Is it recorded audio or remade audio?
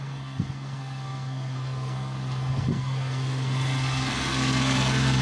remade